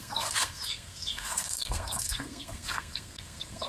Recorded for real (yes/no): no